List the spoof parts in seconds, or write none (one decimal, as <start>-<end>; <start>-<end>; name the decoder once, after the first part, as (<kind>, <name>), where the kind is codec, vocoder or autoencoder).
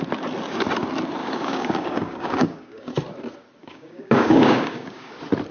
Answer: 1.2-2.9 (codec, DAC); 3.6-5.1